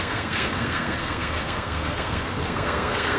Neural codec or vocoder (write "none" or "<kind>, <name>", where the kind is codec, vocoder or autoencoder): codec, SNAC